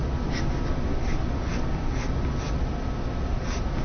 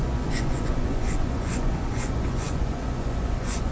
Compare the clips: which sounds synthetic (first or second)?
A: second